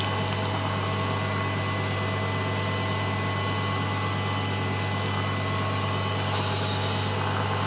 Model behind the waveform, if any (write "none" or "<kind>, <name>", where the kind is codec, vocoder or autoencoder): none